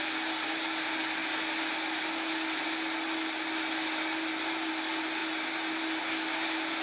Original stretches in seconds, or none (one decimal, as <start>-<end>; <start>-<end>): 0.0-6.8